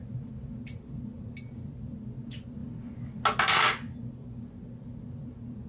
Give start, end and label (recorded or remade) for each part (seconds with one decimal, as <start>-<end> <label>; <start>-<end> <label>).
0.0-5.7 recorded